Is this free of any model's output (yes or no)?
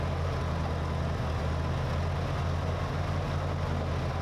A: yes